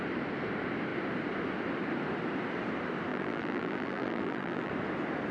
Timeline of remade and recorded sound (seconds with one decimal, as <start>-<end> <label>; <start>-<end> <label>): 0.0-3.1 recorded; 3.1-4.7 remade; 4.7-5.3 recorded